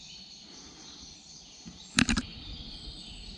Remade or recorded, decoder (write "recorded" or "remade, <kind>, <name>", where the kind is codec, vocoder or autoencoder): recorded